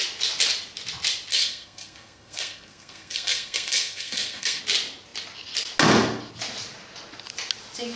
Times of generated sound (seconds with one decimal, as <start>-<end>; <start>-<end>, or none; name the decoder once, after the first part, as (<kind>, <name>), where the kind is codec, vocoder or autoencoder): 1.3-4.6 (codec, SNAC)